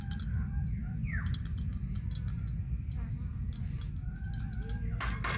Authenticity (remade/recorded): recorded